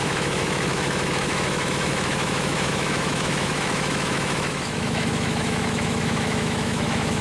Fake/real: fake